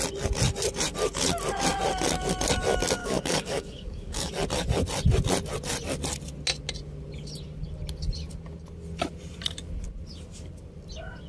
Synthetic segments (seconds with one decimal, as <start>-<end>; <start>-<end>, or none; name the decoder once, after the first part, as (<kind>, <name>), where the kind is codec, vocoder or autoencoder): 3.0-4.3 (codec, DAC)